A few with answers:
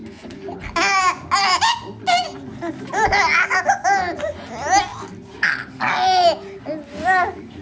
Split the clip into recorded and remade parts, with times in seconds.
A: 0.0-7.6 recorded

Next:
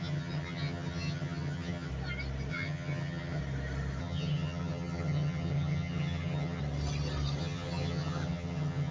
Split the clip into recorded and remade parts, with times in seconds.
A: 0.0-1.9 remade; 1.9-2.5 recorded; 2.5-3.4 remade; 3.4-4.0 recorded; 4.0-6.6 remade; 6.6-7.4 recorded; 7.4-8.9 remade

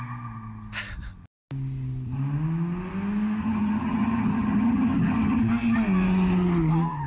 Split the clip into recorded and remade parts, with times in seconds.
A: 0.0-3.4 recorded; 3.4-5.4 remade; 5.4-7.1 recorded

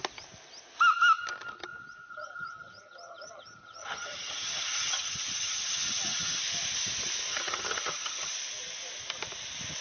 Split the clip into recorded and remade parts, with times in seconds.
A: 0.0-2.1 recorded; 2.1-6.4 remade; 6.4-7.3 recorded; 7.3-8.3 remade; 8.3-9.8 recorded

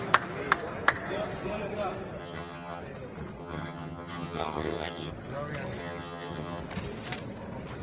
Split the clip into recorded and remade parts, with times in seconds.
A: 0.0-2.2 recorded; 2.2-2.8 remade; 2.8-3.4 recorded; 3.4-5.1 remade; 5.1-5.8 recorded; 5.8-6.6 remade; 6.6-7.8 recorded

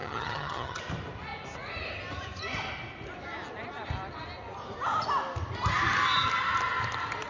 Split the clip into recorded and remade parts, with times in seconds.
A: 0.0-0.8 remade; 0.8-7.3 recorded

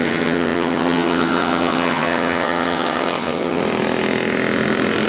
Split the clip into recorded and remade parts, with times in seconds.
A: 0.0-3.6 remade; 3.6-5.1 recorded

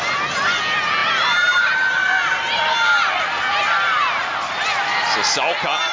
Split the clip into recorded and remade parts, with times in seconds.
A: 0.0-5.9 recorded